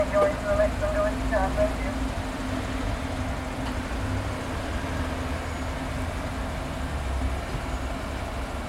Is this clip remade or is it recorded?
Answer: recorded